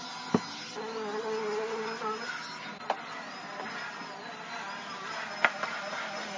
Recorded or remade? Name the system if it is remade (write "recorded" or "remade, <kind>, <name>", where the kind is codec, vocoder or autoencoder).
recorded